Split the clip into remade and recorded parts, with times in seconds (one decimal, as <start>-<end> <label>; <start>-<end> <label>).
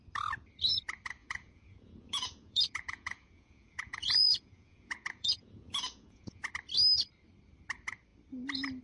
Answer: 0.0-1.2 recorded; 1.2-6.5 remade; 6.5-8.8 recorded